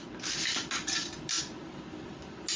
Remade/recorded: recorded